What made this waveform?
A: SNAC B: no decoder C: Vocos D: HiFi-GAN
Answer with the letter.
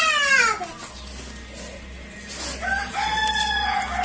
B